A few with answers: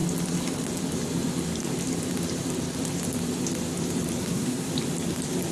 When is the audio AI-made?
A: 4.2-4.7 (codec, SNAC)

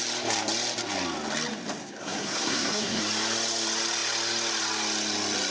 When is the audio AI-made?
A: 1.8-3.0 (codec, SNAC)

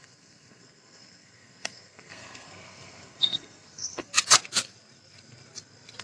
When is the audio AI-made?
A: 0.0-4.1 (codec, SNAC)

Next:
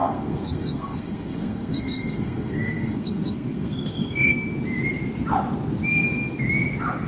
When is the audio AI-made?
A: 0.0-4.3 (codec, SNAC); 5.9-6.4

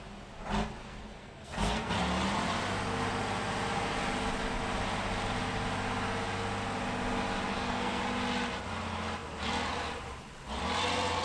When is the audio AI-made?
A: 0.8-2.0 (codec, SNAC); 7.5-8.0

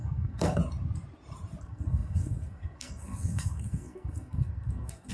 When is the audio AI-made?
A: 0.0-0.6 (codec, SNAC); 1.6-5.1